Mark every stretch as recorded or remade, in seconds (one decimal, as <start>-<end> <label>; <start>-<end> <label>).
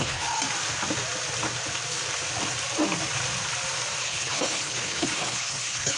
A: 0.0-0.4 remade; 0.4-4.0 recorded; 4.0-6.0 remade